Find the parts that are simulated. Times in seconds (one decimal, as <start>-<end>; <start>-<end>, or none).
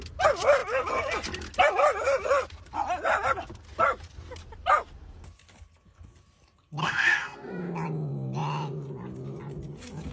6.8-7.5